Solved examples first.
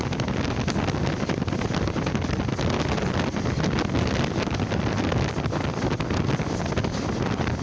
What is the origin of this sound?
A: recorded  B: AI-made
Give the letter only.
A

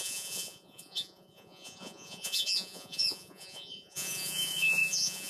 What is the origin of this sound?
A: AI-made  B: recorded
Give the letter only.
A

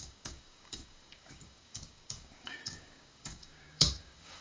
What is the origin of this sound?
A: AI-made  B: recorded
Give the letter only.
A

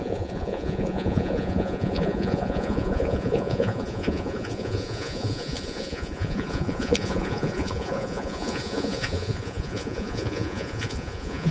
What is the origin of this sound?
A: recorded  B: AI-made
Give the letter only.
B